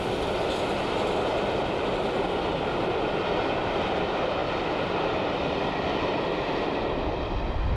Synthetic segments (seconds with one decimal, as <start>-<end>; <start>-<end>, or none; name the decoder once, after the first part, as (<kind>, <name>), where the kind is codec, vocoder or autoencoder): none